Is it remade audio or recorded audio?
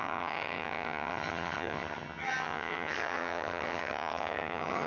remade